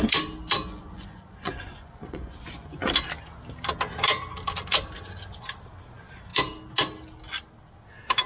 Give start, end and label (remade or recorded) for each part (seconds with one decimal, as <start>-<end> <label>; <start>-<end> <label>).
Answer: 0.0-0.7 recorded; 0.7-2.9 remade; 2.9-8.3 recorded